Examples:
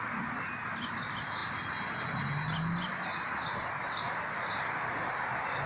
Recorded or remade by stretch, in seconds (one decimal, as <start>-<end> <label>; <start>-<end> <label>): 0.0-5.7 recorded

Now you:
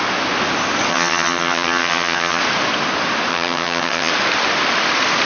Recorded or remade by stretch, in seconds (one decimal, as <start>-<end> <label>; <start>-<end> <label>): 0.0-0.9 recorded; 0.9-2.4 remade; 2.4-3.3 recorded; 3.3-4.1 remade; 4.1-5.3 recorded

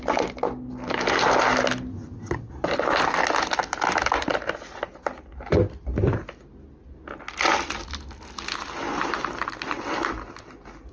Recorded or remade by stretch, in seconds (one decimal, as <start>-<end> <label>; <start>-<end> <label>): 0.0-1.9 recorded; 1.9-2.5 remade; 2.5-10.9 recorded

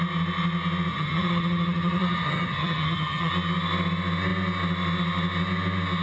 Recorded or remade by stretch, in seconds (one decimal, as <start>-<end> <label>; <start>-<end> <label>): 0.0-0.9 recorded; 0.9-3.3 remade; 3.3-6.0 recorded

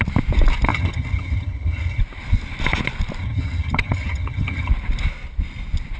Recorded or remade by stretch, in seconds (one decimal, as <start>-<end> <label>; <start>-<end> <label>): 0.0-0.7 recorded; 0.7-2.0 remade; 2.0-3.2 recorded; 3.2-4.7 remade; 4.7-6.0 recorded

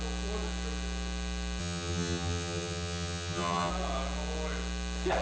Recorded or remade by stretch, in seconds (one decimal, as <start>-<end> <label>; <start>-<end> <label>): 0.0-1.6 recorded; 1.6-3.7 remade; 3.7-5.2 recorded

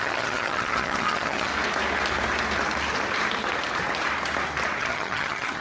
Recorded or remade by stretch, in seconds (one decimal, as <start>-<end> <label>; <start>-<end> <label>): 0.0-1.5 remade; 1.5-4.8 recorded; 4.8-5.6 remade

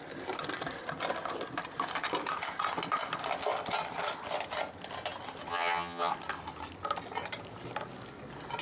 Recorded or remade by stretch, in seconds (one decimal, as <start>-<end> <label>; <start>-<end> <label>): 0.0-5.5 recorded; 5.5-6.1 remade; 6.1-8.6 recorded